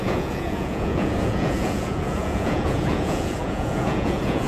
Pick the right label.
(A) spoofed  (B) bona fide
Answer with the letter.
A